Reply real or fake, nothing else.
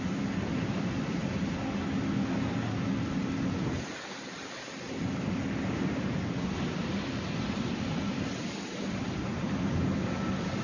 real